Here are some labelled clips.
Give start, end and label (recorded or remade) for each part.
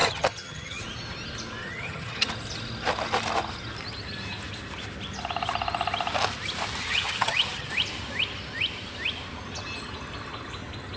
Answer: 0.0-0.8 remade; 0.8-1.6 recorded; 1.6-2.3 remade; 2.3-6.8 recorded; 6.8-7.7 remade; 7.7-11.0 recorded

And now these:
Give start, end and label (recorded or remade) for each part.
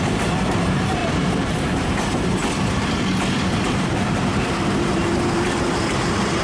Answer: 0.0-2.4 remade; 2.4-3.6 recorded; 3.6-6.4 remade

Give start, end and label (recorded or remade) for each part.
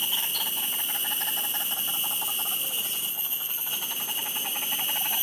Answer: 0.0-3.1 recorded; 3.1-3.7 remade; 3.7-5.2 recorded